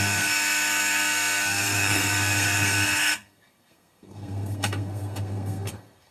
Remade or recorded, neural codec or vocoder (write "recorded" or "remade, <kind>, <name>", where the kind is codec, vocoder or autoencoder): remade, codec, SNAC